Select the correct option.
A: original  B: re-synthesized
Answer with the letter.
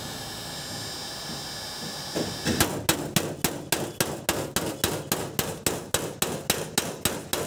A